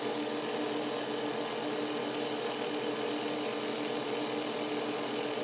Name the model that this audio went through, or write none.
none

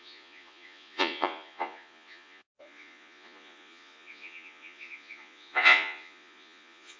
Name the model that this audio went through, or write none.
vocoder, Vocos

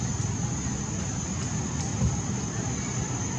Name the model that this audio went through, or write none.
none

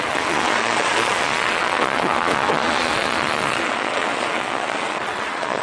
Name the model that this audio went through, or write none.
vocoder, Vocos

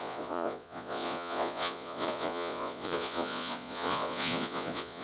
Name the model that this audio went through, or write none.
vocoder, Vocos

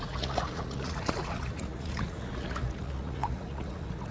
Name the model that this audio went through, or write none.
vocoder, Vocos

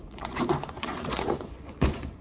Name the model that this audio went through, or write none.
vocoder, Vocos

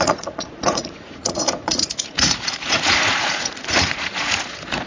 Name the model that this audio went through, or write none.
vocoder, Vocos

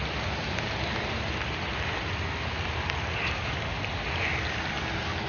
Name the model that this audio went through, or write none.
none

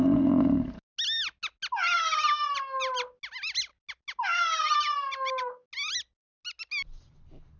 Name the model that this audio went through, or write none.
none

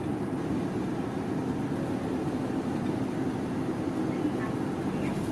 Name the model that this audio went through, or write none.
none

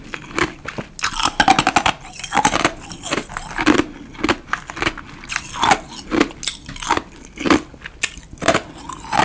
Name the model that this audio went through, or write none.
none